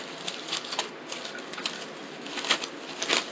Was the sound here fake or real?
real